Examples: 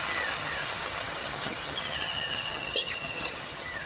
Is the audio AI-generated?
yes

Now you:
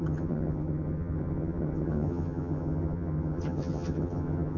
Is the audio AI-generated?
yes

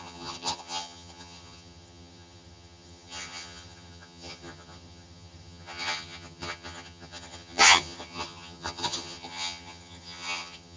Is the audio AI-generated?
yes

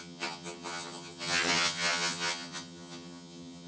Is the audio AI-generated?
yes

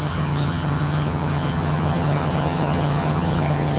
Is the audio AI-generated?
yes